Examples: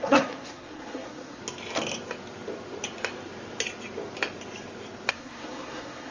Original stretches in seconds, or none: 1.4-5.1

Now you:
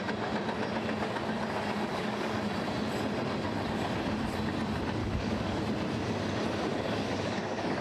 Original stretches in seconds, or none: 0.0-1.9; 2.4-5.0; 5.6-6.7

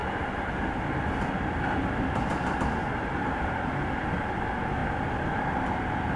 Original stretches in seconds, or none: 0.8-2.3; 3.7-4.8; 5.5-6.2

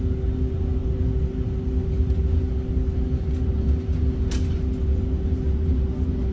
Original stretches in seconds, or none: 0.0-6.3

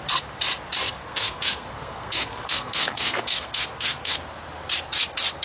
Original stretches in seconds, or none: 0.0-1.0; 4.2-5.4

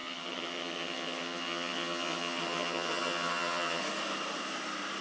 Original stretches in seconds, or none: 3.8-5.0